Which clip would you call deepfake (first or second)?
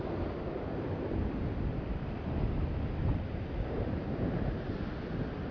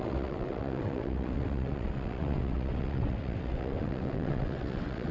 second